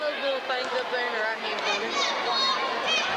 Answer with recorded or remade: recorded